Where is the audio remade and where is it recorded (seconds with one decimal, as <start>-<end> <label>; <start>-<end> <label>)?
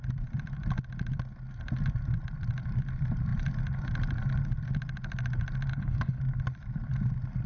0.0-5.7 recorded; 5.7-6.2 remade; 6.2-7.5 recorded